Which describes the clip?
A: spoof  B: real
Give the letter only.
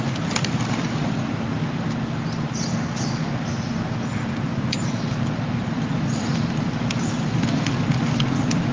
B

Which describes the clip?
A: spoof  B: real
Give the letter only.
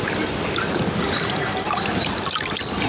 B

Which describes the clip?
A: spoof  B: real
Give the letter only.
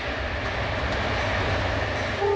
B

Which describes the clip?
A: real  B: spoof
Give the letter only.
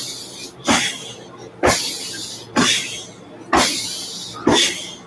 A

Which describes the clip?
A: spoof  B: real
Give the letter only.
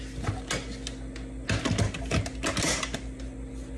B